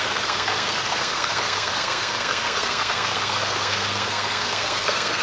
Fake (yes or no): yes